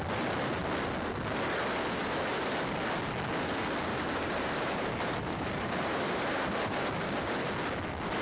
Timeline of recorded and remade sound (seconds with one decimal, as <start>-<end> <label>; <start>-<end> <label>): 0.0-3.9 recorded; 3.9-7.2 remade; 7.2-8.2 recorded